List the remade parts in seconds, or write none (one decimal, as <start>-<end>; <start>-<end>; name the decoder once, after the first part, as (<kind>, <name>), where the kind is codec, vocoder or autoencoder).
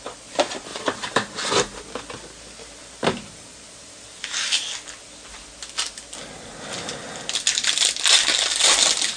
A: 0.7-1.8 (vocoder, BigVGAN v2); 2.8-4.7